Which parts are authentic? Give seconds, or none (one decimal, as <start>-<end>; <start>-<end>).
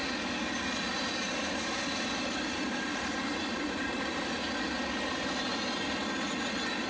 0.0-2.2; 4.2-6.9